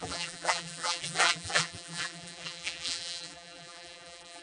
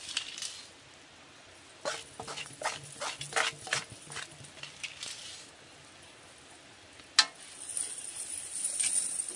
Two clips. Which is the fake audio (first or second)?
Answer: first